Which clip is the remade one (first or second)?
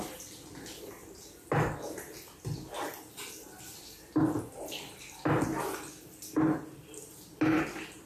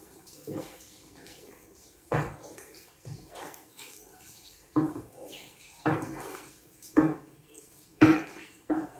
second